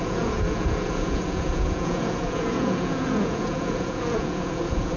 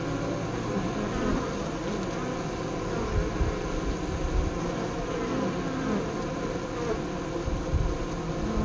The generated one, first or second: first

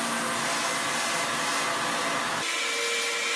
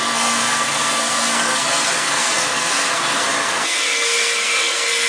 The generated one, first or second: second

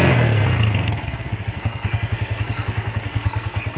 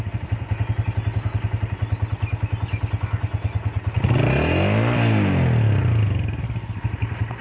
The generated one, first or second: first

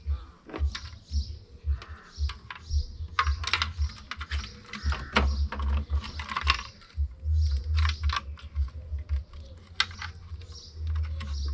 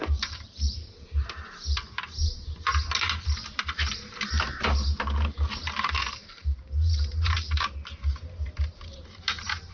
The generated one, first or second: second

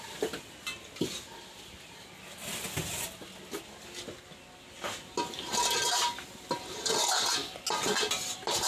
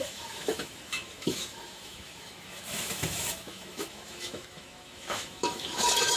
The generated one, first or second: second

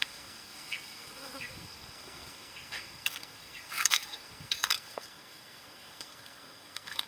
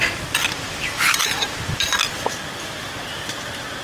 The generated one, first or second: first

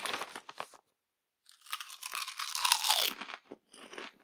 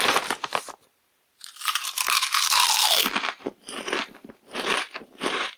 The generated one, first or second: second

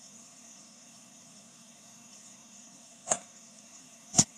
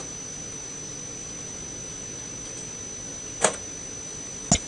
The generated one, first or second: first